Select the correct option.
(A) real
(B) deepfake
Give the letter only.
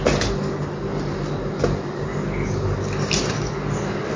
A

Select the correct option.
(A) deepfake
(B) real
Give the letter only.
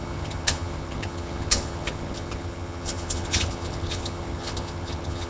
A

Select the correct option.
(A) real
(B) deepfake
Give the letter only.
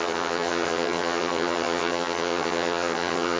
B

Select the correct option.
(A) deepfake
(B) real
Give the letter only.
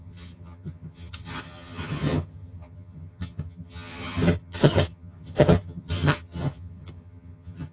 A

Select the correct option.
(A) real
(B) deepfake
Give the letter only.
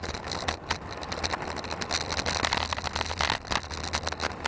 A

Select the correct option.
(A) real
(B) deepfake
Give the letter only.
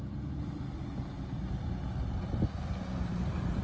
A